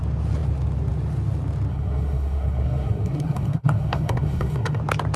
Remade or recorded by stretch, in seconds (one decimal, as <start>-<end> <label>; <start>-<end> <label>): 0.0-1.7 recorded; 1.7-4.8 remade; 4.8-5.2 recorded